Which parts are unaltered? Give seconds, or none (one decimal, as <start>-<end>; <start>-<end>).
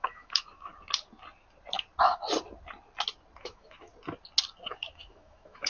0.7-3.4; 3.9-4.8